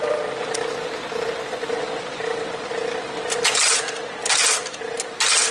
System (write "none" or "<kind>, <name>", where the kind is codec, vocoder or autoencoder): none